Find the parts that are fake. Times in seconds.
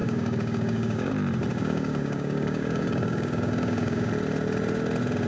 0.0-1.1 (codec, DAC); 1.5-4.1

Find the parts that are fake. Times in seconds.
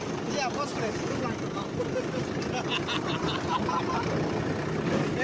none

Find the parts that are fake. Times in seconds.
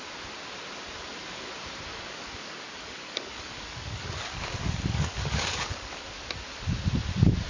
1.9-6.1 (codec, DAC)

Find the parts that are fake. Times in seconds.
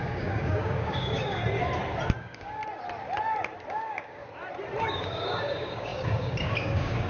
0.0-1.4 (codec, DAC); 2.2-2.6; 3.7-4.2; 4.8-7.1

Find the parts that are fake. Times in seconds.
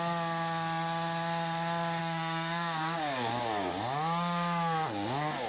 2.0-5.5 (codec, DAC)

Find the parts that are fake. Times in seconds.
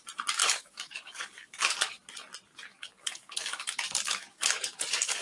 0.4-1.9 (codec, DAC); 2.7-5.2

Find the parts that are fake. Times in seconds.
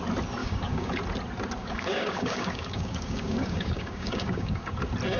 0.4-0.9 (codec, DAC); 1.6-4.7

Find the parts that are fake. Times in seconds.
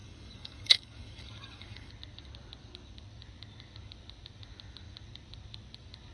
0.0-1.9 (codec, DAC)